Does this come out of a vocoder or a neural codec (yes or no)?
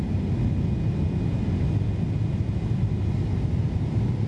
no